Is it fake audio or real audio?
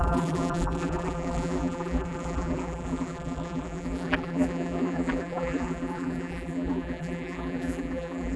fake